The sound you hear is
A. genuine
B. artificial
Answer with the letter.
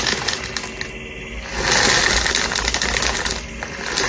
A